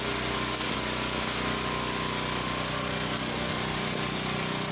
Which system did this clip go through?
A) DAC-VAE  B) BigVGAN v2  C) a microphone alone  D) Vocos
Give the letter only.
C